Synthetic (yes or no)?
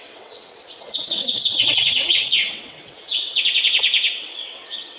yes